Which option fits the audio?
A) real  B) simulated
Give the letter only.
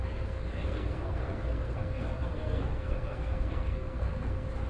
B